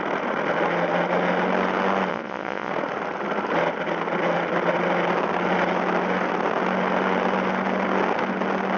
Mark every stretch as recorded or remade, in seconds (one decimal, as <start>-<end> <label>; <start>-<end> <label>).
0.0-2.1 recorded; 2.1-2.7 remade; 2.7-8.8 recorded